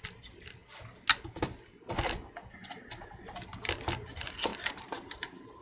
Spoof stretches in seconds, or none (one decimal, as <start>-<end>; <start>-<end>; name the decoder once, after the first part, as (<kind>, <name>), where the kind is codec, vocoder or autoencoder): 2.6-3.3 (vocoder, BigVGAN v2); 4.5-5.6